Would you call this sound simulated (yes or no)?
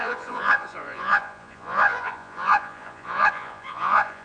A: yes